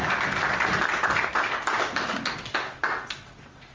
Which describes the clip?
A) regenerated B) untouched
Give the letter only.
B